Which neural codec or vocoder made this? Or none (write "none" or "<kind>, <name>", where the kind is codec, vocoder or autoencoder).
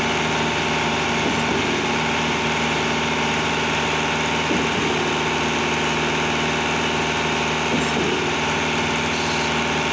none